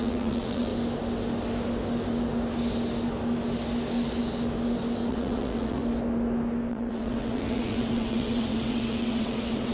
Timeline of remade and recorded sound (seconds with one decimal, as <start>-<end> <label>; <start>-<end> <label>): 0.0-0.7 remade; 0.7-5.1 recorded; 5.1-5.8 remade; 5.8-6.7 recorded; 6.7-9.7 remade